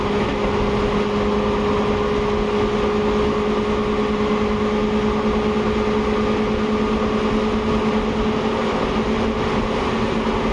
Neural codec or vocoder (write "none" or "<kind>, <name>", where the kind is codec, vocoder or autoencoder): none